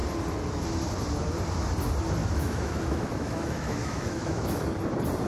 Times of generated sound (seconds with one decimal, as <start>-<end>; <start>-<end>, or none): 2.2-4.7